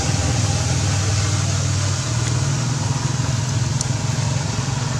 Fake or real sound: real